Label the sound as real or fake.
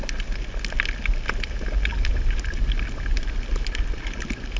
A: real